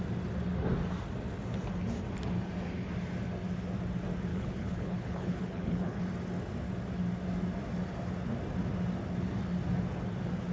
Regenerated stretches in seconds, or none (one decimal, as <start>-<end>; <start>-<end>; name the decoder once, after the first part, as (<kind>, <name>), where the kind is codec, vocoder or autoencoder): 4.3-6.0 (codec, HILCodec)